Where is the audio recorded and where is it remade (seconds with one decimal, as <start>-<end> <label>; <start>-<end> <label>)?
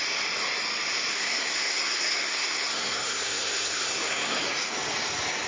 0.0-1.1 recorded; 1.1-4.4 remade; 4.4-5.5 recorded